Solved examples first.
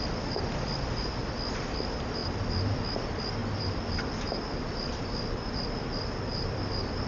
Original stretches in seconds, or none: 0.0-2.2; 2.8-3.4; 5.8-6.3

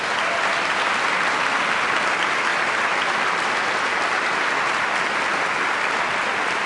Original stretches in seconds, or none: 0.0-6.7

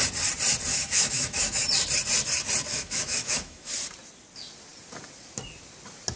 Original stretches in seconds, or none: 0.0-0.7; 1.7-2.7; 3.7-6.2

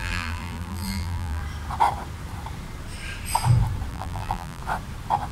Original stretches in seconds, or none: 1.4-3.9; 4.6-5.3

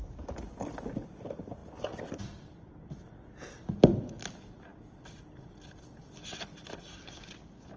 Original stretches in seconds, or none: 0.0-7.8

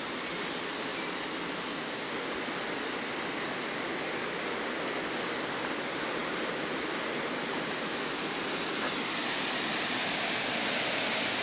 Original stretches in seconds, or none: 0.0-11.4

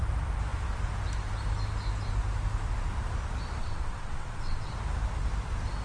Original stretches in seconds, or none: 0.0-3.6; 4.7-5.8